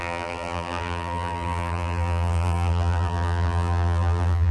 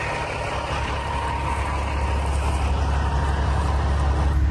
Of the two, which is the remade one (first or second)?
first